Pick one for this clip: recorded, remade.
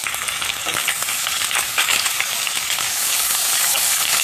remade